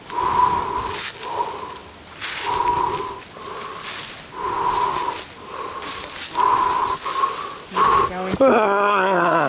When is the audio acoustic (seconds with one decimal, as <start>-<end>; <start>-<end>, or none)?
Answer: 0.0-1.8; 4.7-9.5